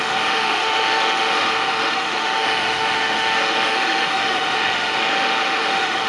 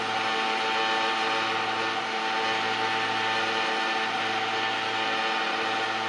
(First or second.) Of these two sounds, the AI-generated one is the first